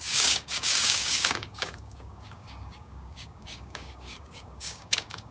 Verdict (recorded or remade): remade